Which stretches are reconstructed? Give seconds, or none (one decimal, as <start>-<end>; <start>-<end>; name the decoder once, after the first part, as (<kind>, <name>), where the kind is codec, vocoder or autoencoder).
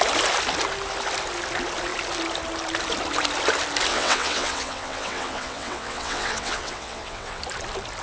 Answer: 3.9-7.4 (vocoder, WaveNeXt)